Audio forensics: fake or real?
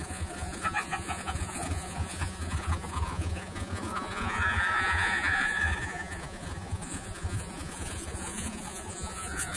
fake